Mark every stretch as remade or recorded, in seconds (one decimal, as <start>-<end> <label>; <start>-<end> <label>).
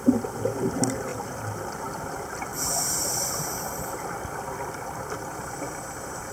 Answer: 0.0-6.3 recorded